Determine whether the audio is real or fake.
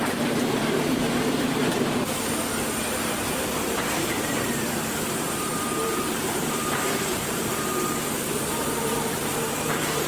fake